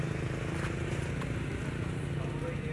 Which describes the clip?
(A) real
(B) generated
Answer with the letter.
A